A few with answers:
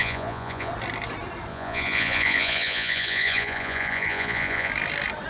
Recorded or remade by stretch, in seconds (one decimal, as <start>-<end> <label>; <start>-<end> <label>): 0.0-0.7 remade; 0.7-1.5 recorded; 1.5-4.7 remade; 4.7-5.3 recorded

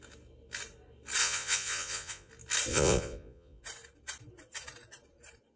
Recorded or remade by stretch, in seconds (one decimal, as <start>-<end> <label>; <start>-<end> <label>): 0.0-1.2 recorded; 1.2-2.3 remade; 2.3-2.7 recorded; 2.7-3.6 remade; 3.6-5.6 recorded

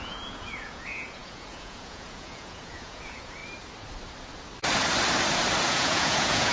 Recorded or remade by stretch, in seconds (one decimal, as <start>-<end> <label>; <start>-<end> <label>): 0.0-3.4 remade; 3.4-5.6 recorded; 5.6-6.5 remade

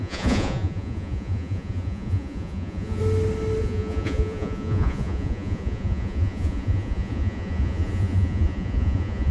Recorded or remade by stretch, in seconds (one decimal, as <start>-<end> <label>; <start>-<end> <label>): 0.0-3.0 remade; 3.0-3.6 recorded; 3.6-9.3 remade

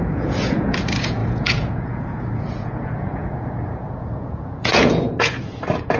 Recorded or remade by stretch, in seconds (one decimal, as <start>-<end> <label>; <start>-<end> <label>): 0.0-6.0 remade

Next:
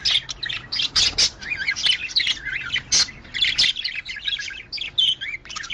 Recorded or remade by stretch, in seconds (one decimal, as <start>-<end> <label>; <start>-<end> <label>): 0.0-5.7 recorded

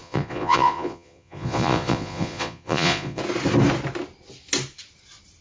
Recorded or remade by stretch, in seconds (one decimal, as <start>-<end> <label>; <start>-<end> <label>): 0.0-3.2 remade; 3.2-5.4 recorded

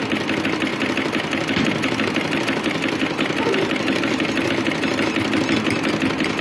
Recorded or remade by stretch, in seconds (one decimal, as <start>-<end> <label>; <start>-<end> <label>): 0.0-6.4 recorded